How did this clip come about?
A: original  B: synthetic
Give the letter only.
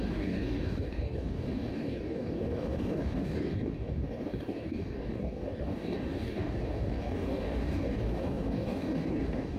B